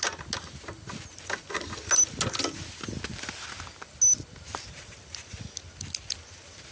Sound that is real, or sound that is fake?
real